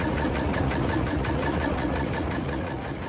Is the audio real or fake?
fake